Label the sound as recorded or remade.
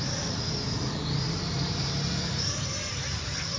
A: remade